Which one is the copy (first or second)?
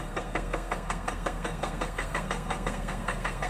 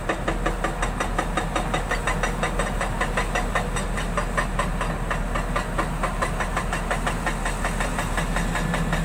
first